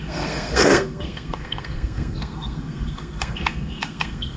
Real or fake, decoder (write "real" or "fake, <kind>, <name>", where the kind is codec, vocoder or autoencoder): fake, codec, SNAC